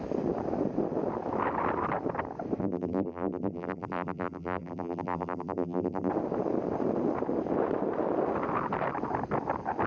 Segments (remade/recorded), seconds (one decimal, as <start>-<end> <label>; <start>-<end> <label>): 0.0-2.6 recorded; 2.6-6.1 remade; 6.1-9.9 recorded

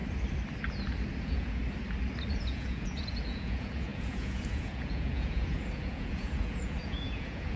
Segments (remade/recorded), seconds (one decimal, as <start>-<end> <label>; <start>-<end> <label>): 0.0-1.2 recorded; 1.2-1.6 remade; 1.6-2.3 recorded; 2.3-7.6 remade

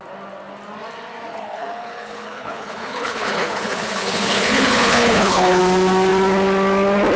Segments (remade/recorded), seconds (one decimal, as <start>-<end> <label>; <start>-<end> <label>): 0.0-1.3 recorded; 1.3-5.6 remade; 5.6-7.2 recorded